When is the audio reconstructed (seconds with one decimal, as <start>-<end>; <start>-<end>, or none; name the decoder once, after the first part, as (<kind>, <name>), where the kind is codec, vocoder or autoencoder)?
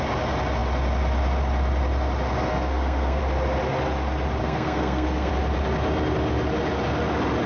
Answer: 2.5-3.2 (codec, SNAC); 4.4-5.3